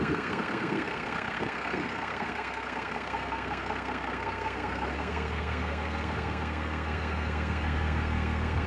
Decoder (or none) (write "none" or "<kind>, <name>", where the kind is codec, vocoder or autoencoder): codec, SNAC